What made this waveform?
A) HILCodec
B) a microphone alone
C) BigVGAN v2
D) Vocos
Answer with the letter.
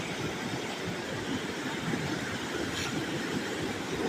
C